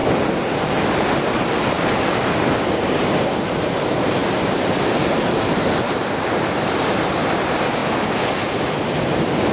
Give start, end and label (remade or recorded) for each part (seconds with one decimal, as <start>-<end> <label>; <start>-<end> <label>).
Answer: 0.0-7.8 remade; 7.8-8.5 recorded; 8.5-9.5 remade